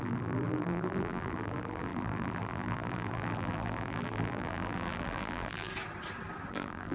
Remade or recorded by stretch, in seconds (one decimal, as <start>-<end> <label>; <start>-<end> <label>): 0.0-5.7 remade; 5.7-6.5 recorded; 6.5-6.9 remade